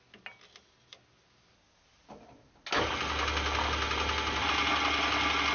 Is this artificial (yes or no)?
no